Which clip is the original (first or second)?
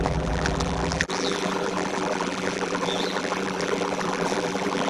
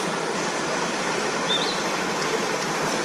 second